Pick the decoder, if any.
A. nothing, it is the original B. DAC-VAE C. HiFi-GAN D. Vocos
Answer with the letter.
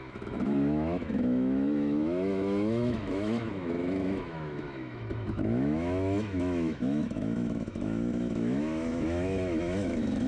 B